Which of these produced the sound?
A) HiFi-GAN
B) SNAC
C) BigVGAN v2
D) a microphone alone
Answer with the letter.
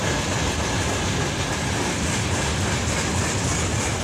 D